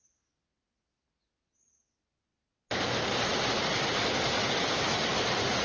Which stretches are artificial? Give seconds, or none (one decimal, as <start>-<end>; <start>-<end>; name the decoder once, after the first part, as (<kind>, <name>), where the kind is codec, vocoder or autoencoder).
none